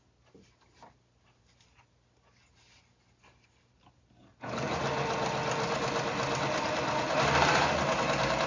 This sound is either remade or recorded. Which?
recorded